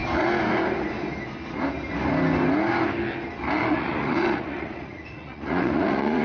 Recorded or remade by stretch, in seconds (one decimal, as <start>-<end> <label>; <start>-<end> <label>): 0.0-3.7 recorded; 3.7-6.2 remade